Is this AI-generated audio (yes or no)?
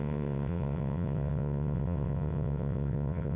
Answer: yes